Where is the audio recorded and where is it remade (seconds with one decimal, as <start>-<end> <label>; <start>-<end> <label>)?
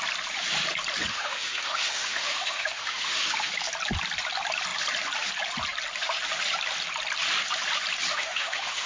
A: 0.0-1.1 recorded; 1.1-3.5 remade; 3.5-8.1 recorded; 8.1-8.9 remade